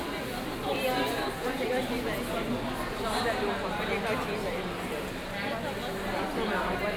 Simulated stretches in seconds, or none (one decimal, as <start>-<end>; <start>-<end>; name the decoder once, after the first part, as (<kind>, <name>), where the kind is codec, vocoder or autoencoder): none